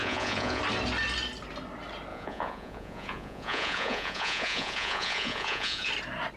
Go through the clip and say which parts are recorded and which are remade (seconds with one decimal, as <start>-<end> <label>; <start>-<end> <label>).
0.0-0.6 remade; 0.6-2.1 recorded; 2.1-5.9 remade; 5.9-6.4 recorded